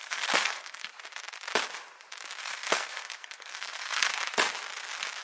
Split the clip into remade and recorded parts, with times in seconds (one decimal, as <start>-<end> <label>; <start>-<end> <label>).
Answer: 0.0-0.8 remade; 0.8-2.4 recorded; 2.4-4.1 remade; 4.1-5.2 recorded